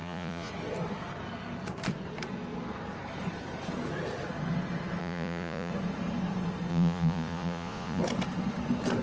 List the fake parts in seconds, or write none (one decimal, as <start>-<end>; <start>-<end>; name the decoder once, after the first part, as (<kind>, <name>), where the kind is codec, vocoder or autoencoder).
0.0-0.5 (vocoder, Vocos); 5.0-5.7; 6.7-8.0